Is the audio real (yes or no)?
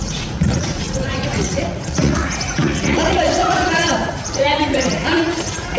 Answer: no